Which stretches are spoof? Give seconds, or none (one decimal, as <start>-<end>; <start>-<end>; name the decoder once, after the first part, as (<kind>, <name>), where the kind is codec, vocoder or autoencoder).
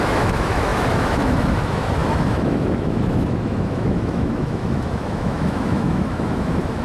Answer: 0.0-6.8 (autoencoder, DAC-VAE)